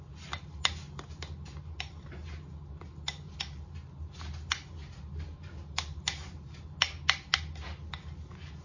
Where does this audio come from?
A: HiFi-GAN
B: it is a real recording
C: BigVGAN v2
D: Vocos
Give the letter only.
B